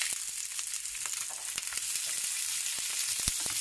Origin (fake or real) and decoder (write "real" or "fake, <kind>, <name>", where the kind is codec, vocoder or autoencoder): real